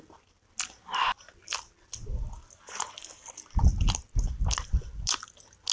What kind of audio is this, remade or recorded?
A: recorded